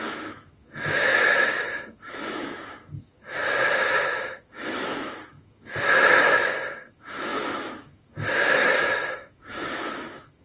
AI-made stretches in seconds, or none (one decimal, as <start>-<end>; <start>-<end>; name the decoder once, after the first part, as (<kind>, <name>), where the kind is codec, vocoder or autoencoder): 0.0-10.4 (autoencoder, DAC-VAE)